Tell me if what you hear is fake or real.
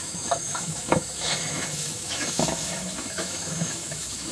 fake